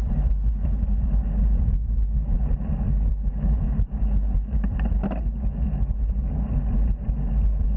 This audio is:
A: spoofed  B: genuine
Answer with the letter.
B